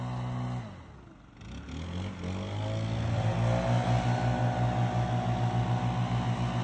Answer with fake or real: real